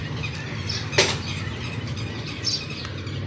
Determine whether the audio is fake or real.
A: real